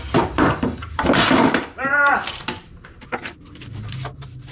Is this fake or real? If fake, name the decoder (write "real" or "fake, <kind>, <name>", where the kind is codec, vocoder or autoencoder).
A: fake, vocoder, BigVGAN v2